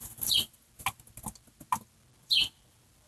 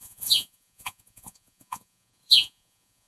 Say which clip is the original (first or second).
first